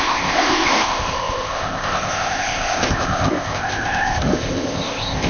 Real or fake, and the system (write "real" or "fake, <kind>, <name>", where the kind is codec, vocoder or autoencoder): fake, codec, ZipCodec